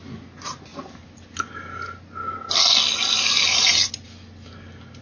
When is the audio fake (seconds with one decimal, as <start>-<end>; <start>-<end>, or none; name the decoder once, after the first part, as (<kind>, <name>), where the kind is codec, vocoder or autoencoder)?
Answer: none